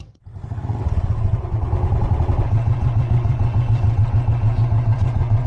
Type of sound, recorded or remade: remade